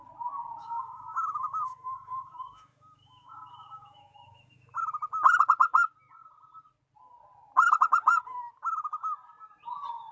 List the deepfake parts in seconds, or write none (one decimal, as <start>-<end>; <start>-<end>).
0.6-4.8